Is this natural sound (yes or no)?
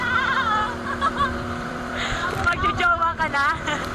no